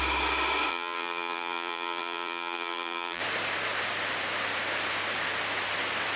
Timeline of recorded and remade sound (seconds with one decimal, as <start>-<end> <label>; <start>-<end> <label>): 0.0-0.7 recorded; 0.7-3.2 remade; 3.2-6.2 recorded